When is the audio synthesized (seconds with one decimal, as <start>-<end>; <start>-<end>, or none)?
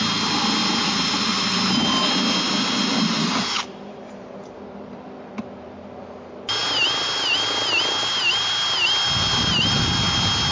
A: 0.6-1.7; 4.4-6.0